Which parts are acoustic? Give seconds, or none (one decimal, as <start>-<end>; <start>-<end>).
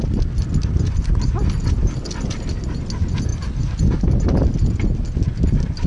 0.0-5.9